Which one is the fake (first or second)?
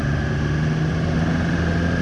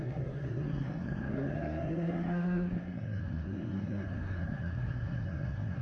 second